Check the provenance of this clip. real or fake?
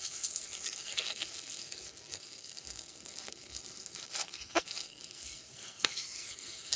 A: fake